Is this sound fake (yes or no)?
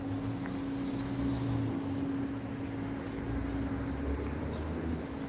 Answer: no